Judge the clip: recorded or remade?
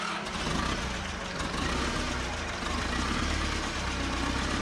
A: recorded